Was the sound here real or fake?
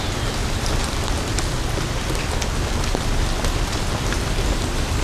real